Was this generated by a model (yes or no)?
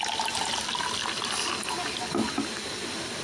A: no